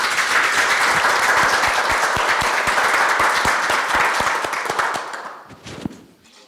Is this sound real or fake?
real